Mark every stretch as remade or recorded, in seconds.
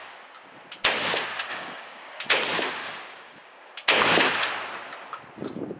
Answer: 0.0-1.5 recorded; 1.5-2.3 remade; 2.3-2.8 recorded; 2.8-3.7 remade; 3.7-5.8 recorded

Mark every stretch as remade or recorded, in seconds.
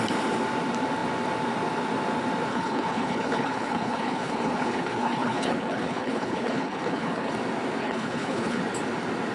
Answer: 0.0-2.5 recorded; 2.5-7.3 remade; 7.3-7.8 recorded; 7.8-8.6 remade; 8.6-9.3 recorded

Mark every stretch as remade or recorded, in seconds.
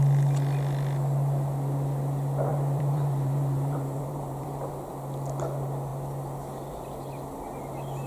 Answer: 0.0-2.5 recorded; 2.5-4.7 remade; 4.7-8.1 recorded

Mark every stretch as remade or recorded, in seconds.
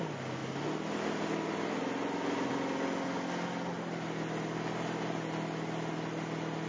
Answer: 0.0-6.7 recorded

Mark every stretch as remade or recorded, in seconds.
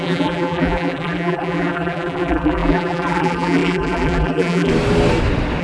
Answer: 0.0-4.7 remade; 4.7-5.6 recorded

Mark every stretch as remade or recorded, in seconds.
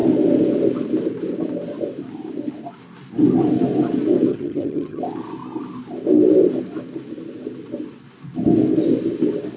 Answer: 0.0-4.3 recorded; 4.3-5.0 remade; 5.0-9.6 recorded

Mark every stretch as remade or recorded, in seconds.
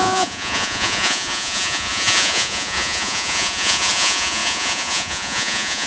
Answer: 0.0-5.9 remade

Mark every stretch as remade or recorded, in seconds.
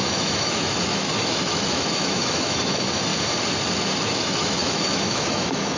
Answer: 0.0-3.1 remade; 3.1-4.0 recorded; 4.0-5.8 remade